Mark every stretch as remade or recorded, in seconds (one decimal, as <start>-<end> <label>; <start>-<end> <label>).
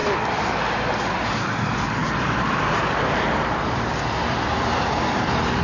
0.0-2.0 recorded; 2.0-5.6 remade